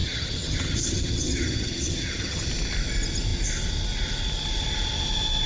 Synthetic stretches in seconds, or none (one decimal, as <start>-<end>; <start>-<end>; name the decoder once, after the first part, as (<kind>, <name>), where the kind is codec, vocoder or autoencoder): 0.0-2.4 (vocoder, HiFi-GAN)

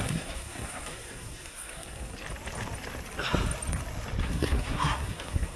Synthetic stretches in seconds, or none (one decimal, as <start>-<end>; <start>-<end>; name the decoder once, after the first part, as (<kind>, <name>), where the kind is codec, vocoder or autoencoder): 0.0-2.1 (codec, SNAC); 4.2-5.6

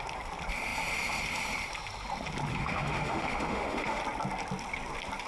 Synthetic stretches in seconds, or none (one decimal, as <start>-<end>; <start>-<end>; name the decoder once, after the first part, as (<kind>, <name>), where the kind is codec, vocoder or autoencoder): 2.5-4.0 (autoencoder, DAC-VAE)

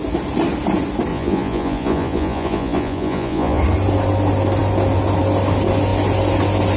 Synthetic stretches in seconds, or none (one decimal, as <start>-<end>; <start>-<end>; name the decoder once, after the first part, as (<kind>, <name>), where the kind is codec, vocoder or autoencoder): 1.1-3.6 (vocoder, Vocos)

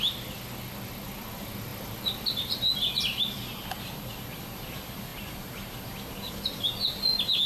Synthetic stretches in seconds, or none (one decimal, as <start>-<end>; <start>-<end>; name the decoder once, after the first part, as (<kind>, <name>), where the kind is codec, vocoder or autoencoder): none

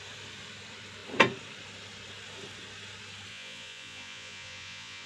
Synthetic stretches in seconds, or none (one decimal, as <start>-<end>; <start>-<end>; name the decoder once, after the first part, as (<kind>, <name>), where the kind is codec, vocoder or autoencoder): 3.3-5.1 (vocoder, Vocos)